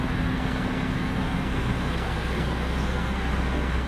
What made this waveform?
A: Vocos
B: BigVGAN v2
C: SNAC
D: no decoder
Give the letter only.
C